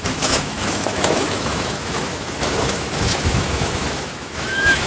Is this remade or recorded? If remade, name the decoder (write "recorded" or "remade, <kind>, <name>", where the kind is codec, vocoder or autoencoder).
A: remade, autoencoder, DAC-VAE